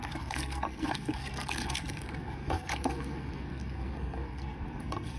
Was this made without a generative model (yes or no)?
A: no